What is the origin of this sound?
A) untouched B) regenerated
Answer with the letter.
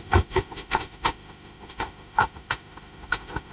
B